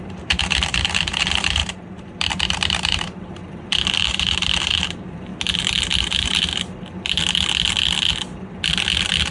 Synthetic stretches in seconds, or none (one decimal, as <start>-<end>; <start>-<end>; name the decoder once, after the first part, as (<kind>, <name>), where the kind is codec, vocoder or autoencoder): 0.0-5.3 (vocoder, BigVGAN v2); 6.0-6.5